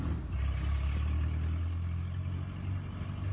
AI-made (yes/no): no